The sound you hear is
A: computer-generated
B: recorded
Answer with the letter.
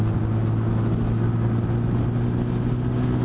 B